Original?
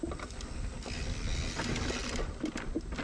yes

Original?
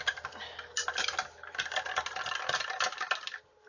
yes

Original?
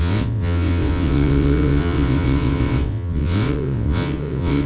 no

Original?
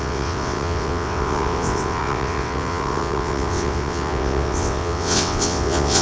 no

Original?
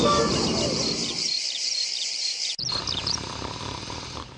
yes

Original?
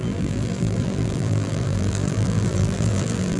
no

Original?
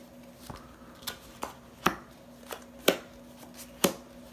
yes